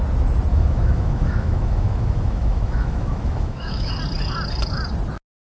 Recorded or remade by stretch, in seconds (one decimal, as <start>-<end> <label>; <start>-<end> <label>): 0.0-0.5 recorded; 0.5-3.9 remade; 3.9-5.6 recorded